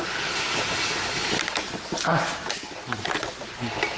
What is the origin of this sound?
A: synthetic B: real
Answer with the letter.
B